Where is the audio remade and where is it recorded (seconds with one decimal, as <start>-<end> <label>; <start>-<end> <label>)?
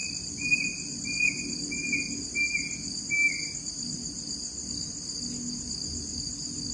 0.0-2.0 remade; 2.0-6.7 recorded